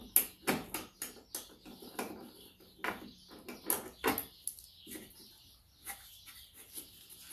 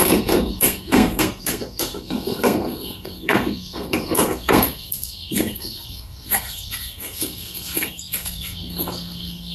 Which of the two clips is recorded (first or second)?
first